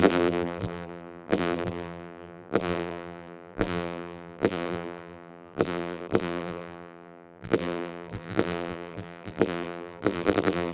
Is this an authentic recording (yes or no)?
no